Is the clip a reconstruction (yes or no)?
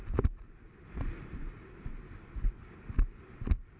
no